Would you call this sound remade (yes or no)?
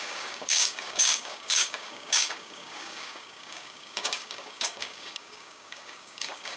yes